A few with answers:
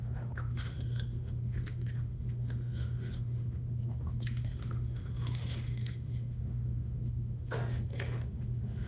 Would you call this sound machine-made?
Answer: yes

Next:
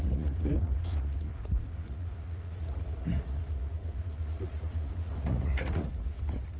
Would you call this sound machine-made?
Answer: yes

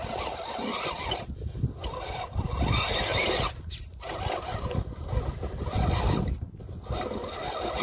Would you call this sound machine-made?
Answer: no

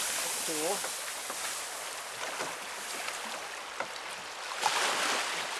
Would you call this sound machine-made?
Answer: no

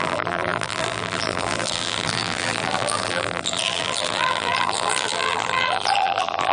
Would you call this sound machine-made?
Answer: yes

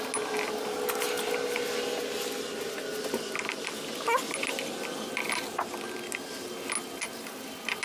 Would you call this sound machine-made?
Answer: no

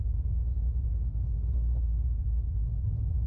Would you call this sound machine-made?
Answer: no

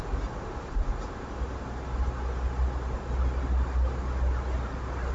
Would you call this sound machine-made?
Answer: no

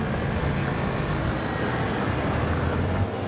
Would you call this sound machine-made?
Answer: no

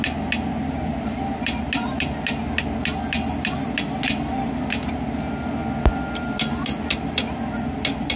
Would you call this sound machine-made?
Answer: no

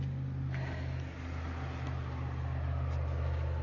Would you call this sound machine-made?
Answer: no